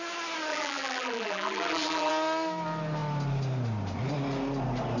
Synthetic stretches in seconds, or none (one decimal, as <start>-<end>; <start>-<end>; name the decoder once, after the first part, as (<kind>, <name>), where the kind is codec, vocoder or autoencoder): 0.5-2.1 (vocoder, BigVGAN v2)